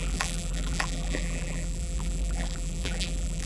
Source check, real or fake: fake